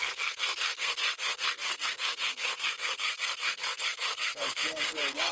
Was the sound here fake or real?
fake